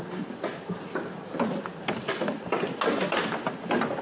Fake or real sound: real